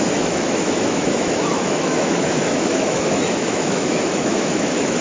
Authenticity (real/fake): fake